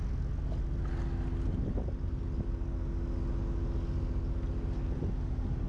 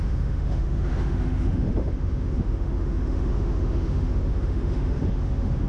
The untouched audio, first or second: first